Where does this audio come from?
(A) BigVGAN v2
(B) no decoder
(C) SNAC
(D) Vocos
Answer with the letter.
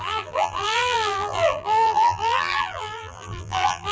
A